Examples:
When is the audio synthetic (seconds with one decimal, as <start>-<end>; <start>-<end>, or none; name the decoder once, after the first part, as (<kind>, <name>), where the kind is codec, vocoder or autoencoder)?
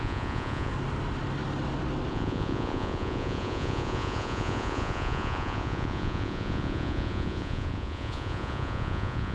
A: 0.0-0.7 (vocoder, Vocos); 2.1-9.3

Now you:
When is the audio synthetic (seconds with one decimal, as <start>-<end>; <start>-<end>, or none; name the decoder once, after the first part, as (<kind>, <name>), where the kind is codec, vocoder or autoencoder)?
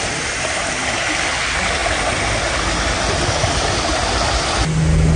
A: none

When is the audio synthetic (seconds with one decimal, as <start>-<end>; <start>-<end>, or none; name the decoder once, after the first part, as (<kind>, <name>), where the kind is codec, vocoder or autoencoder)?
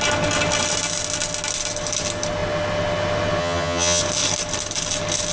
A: 3.4-4.0 (vocoder, HiFi-GAN)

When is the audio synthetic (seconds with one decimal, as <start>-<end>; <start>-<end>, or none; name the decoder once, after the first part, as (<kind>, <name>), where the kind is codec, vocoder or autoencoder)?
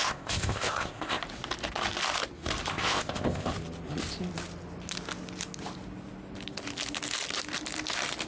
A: 0.0-1.2 (codec, ZipCodec); 2.7-3.5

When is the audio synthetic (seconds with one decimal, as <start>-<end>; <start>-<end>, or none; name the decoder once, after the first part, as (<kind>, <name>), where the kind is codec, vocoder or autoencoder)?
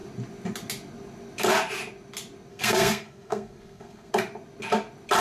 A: 2.5-4.1 (codec, SNAC)